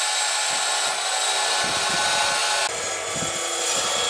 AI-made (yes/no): no